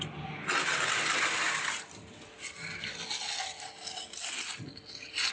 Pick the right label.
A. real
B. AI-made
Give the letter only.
A